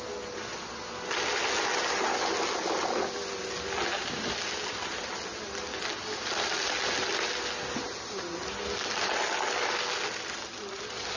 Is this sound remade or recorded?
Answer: recorded